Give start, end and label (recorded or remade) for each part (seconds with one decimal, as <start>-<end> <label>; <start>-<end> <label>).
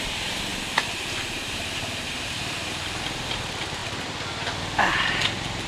0.0-0.5 remade; 0.5-1.2 recorded; 1.2-3.8 remade; 3.8-4.9 recorded; 4.9-5.7 remade